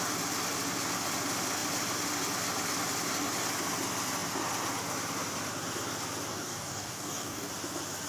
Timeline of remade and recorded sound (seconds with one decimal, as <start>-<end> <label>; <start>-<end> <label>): 0.0-6.3 recorded; 6.3-7.5 remade; 7.5-8.1 recorded